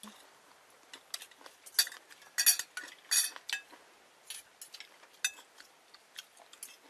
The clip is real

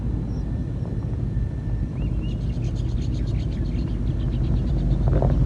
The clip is real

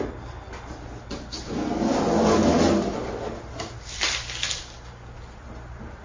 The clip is real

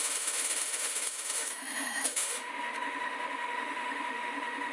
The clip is fake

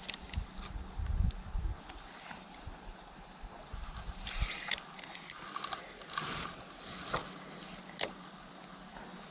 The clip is real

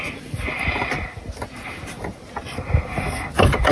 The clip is real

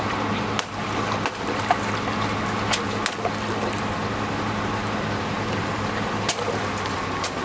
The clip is real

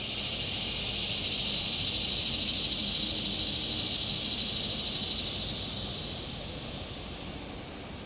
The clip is real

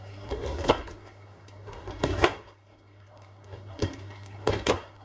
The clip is fake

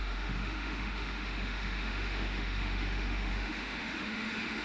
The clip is fake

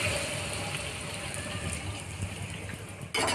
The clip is real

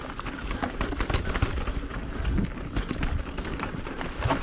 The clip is real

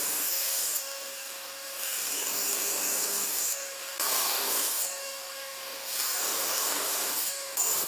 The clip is fake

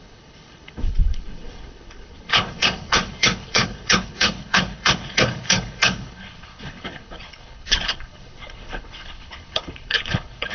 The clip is fake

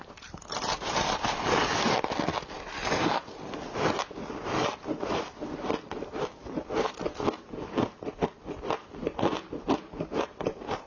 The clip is real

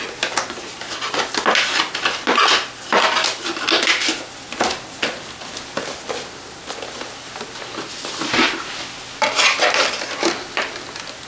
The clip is real